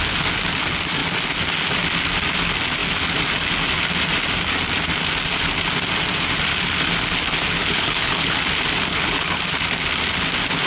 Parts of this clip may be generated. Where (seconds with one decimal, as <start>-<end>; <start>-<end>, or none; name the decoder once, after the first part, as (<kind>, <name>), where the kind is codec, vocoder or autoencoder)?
7.6-8.4 (codec, HILCodec); 8.9-9.4